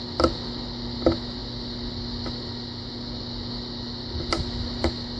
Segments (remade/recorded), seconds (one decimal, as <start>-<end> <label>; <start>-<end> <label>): 0.0-5.2 recorded